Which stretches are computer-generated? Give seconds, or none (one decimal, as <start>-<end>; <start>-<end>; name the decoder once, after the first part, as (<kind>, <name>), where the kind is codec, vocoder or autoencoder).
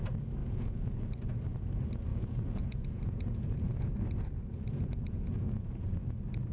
0.4-1.1 (vocoder, Vocos); 2.1-6.0